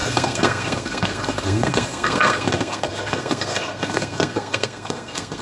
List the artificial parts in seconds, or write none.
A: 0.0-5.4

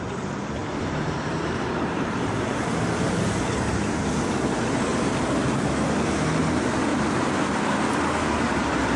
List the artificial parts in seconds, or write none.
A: 0.6-4.1; 6.9-7.6